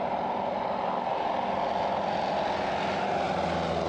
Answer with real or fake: real